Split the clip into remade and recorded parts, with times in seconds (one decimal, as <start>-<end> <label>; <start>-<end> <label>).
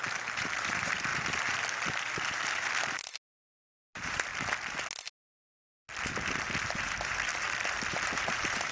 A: 0.0-1.1 remade; 1.1-3.4 recorded; 3.4-4.3 remade; 4.3-5.5 recorded; 5.5-5.9 remade; 5.9-6.5 recorded; 6.5-7.3 remade; 7.3-7.9 recorded; 7.9-8.7 remade